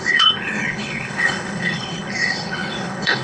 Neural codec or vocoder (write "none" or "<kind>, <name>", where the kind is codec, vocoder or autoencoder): codec, HILCodec